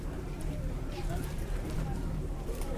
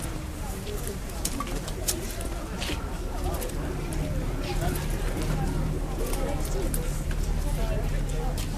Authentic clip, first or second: second